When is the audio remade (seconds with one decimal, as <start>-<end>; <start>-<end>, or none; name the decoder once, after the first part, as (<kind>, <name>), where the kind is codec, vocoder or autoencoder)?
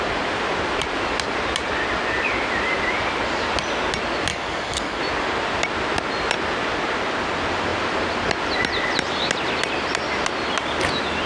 4.3-5.0 (codec, DAC)